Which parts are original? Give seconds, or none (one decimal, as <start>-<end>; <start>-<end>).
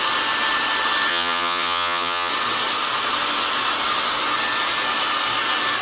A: 0.0-1.1; 2.3-5.8